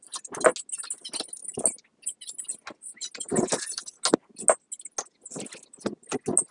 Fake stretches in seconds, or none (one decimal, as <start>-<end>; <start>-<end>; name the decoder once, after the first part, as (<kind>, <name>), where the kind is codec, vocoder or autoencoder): none